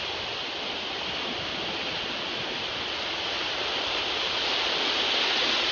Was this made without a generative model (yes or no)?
yes